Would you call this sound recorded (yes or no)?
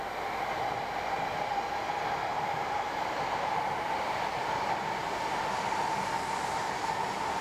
yes